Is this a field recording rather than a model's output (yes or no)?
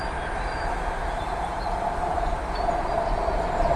yes